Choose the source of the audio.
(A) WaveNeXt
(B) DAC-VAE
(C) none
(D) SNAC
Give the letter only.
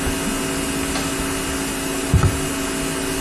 C